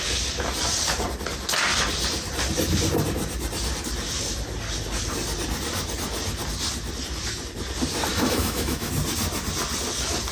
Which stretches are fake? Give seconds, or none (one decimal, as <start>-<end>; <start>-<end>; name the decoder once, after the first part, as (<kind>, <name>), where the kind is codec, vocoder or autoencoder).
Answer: 8.1-8.9 (autoencoder, DAC-VAE)